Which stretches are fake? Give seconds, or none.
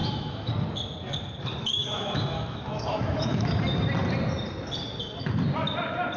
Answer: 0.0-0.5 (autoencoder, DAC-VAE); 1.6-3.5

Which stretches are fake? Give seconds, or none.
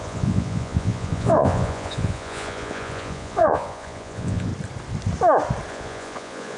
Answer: 0.0-4.5 (vocoder, Vocos); 5.7-6.6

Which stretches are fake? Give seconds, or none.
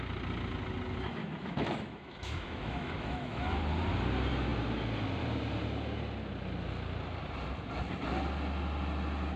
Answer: 1.2-3.6 (autoencoder, DAC-VAE)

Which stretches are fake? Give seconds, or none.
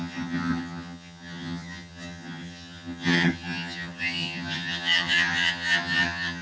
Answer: 0.0-6.4 (vocoder, HiFi-GAN)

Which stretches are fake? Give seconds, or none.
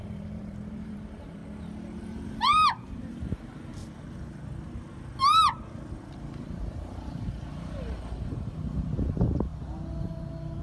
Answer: 0.0-1.4 (vocoder, BigVGAN v2); 2.0-3.8; 6.4-9.5; 10.0-10.6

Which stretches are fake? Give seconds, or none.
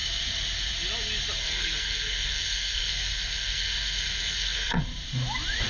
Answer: 1.4-4.8 (codec, SNAC)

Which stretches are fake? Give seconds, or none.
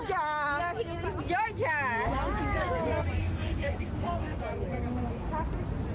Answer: 3.2-4.4 (codec, SNAC)